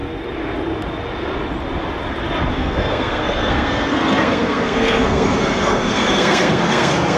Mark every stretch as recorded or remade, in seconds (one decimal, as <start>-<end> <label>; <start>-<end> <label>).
0.0-2.5 recorded; 2.5-7.2 remade